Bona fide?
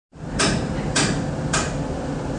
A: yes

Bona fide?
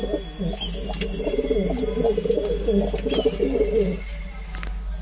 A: yes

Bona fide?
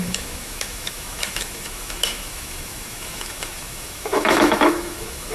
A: no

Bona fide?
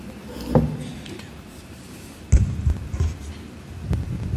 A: yes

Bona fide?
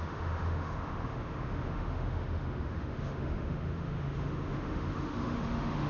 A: no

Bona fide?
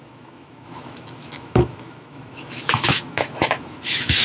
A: no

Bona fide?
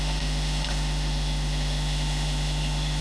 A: no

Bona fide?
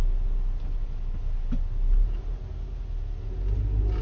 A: yes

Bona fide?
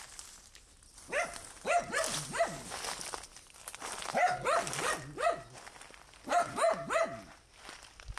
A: yes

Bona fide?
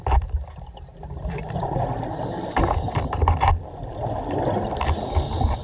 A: yes